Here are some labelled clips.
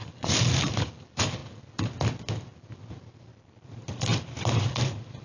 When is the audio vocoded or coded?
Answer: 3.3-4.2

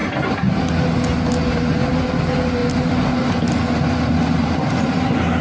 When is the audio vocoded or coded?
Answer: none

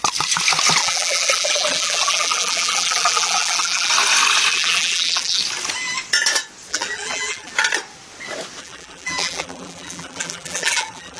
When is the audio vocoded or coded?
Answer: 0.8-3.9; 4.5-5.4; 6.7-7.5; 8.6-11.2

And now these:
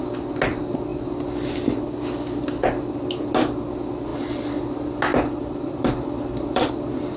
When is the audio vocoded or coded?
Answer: 4.1-4.6; 5.1-6.7